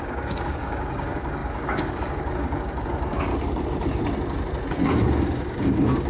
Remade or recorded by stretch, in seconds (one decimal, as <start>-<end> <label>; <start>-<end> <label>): 0.0-3.3 remade; 3.3-4.8 recorded; 4.8-6.1 remade